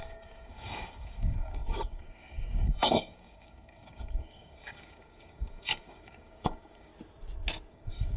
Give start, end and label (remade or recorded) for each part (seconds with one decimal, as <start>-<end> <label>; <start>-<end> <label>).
0.0-6.9 remade; 6.9-7.7 recorded; 7.7-8.2 remade